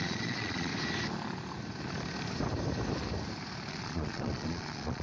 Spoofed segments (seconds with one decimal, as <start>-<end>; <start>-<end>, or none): 0.0-0.7; 3.7-5.0